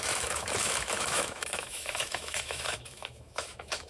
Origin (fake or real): fake